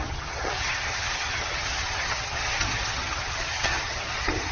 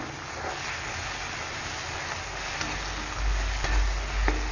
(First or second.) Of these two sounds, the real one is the second